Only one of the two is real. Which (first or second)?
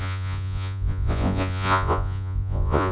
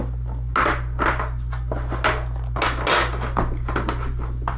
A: second